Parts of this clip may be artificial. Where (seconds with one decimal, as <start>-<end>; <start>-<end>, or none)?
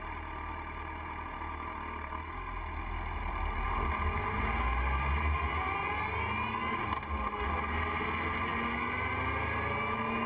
none